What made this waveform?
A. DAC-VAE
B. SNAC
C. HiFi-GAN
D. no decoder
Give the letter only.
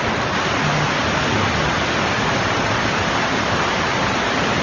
D